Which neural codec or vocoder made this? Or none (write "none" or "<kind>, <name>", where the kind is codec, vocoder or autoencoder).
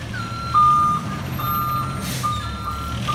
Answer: none